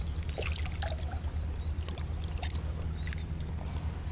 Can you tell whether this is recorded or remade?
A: recorded